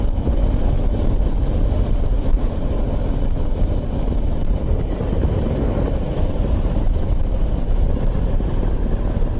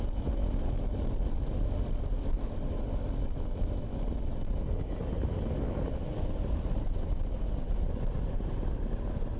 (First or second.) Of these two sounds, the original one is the second